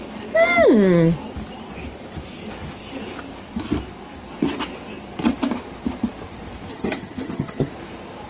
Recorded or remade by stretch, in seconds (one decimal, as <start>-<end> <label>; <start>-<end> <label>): 0.0-6.7 recorded; 6.7-7.7 remade; 7.7-8.3 recorded

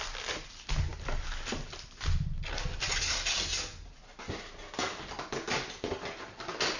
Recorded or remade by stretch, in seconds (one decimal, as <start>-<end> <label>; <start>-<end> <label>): 0.0-6.8 recorded

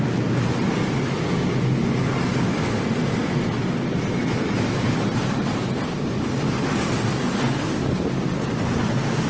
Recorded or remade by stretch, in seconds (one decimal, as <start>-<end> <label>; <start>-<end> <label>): 0.0-9.3 recorded

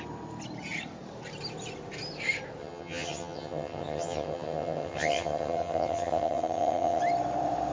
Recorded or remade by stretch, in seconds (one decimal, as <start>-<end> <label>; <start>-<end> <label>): 0.0-2.6 recorded; 2.6-7.0 remade; 7.0-7.7 recorded

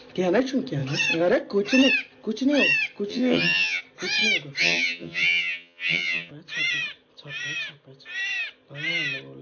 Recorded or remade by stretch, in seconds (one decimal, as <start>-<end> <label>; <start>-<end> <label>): 0.0-3.1 recorded; 3.1-3.8 remade; 3.8-4.6 recorded; 4.6-6.3 remade; 6.3-9.4 recorded

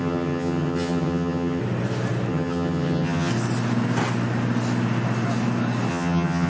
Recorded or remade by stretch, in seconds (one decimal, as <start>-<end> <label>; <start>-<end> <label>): 0.0-1.6 remade; 1.6-2.3 recorded; 2.3-3.3 remade; 3.3-5.9 recorded; 5.9-6.5 remade

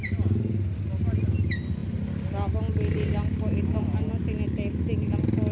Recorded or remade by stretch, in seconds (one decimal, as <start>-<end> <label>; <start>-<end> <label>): 0.0-5.5 recorded